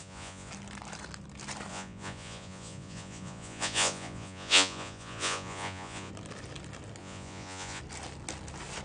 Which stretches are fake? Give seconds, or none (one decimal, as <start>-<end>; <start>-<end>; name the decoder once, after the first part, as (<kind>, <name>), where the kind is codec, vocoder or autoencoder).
0.0-0.5 (vocoder, Vocos); 1.7-6.1; 7.0-7.8

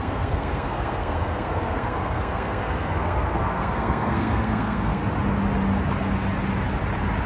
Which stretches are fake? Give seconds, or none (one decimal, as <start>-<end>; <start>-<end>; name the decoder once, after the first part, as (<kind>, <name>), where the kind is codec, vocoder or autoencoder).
0.0-5.0 (codec, SNAC)

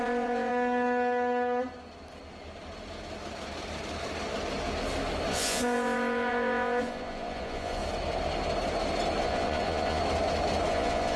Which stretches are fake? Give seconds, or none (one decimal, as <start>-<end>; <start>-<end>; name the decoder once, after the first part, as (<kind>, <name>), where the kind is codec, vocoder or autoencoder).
0.0-0.5 (vocoder, Vocos); 5.3-7.8; 9.2-10.0; 10.7-11.2